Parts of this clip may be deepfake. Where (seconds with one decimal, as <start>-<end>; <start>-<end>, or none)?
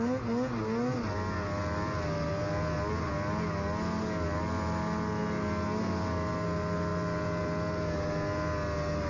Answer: none